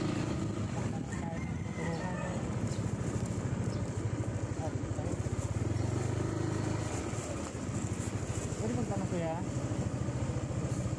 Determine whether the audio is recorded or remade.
recorded